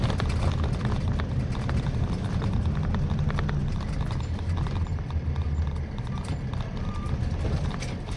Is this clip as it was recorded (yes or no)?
yes